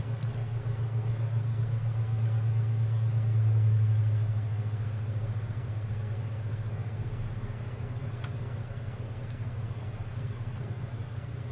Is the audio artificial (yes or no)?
yes